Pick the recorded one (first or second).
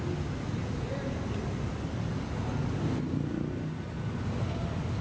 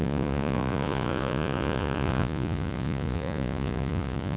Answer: first